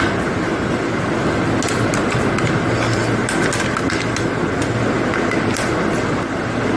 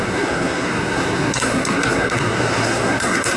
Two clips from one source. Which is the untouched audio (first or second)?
first